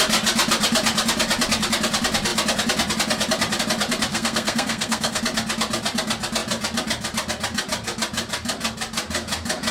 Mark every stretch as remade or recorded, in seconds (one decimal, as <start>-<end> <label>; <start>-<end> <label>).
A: 0.0-4.1 recorded; 4.1-5.2 remade; 5.2-9.7 recorded